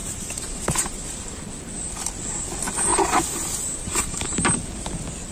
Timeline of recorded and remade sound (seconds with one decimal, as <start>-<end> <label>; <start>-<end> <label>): 0.0-1.4 remade; 1.4-2.9 recorded; 2.9-4.4 remade; 4.4-5.3 recorded